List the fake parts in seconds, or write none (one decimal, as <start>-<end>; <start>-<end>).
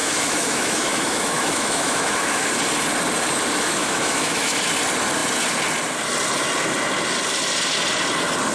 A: 0.0-2.5; 3.8-4.6